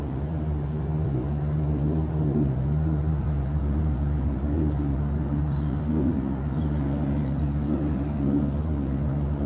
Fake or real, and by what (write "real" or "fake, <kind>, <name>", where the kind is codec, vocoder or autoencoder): fake, vocoder, Vocos